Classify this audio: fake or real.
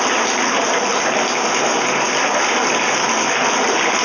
real